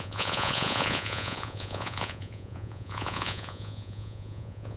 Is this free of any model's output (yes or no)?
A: no